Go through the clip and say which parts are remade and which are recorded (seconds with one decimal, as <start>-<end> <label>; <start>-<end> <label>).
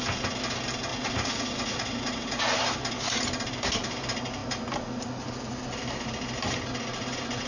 0.0-0.9 recorded; 0.9-2.4 remade; 2.4-7.5 recorded